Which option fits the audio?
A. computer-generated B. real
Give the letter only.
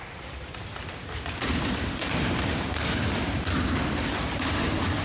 A